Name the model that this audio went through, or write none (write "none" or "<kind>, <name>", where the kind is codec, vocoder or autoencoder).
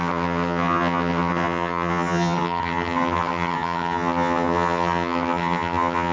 vocoder, HiFi-GAN